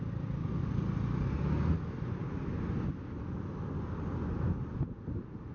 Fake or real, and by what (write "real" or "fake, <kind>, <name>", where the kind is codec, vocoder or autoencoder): real